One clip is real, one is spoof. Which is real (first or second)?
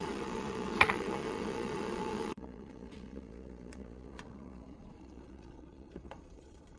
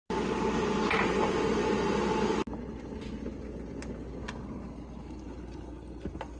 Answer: second